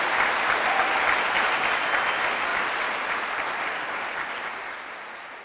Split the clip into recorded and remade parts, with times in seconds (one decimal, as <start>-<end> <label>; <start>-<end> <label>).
0.0-5.4 recorded